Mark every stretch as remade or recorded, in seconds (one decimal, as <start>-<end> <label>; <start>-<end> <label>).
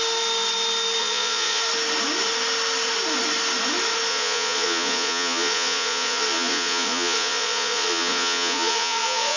0.0-1.0 recorded; 1.0-1.6 remade; 1.6-4.1 recorded; 4.1-9.4 remade